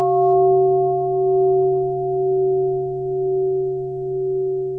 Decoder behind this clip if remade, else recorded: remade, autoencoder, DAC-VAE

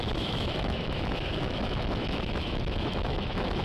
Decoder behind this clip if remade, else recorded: remade, autoencoder, DAC-VAE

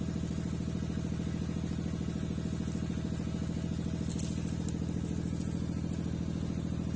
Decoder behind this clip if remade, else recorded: recorded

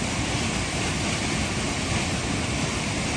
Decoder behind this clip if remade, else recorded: recorded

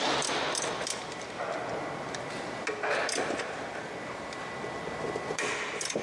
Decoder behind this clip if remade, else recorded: recorded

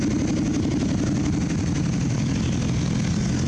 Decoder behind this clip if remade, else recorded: recorded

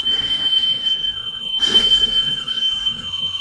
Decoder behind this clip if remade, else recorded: remade, codec, SNAC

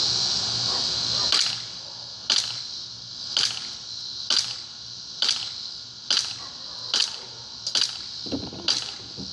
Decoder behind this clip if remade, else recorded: recorded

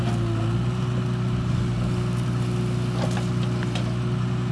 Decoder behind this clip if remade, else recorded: recorded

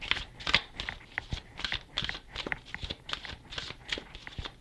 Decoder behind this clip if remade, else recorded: recorded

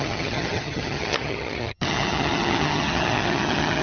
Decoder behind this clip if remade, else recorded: remade, vocoder, HiFi-GAN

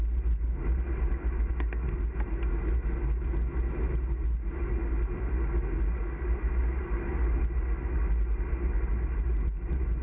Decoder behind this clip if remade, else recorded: recorded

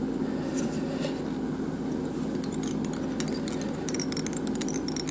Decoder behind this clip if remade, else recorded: recorded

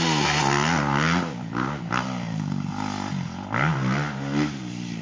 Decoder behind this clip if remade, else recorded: recorded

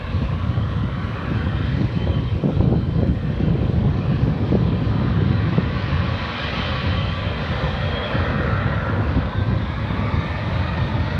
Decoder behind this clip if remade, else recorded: remade, codec, DAC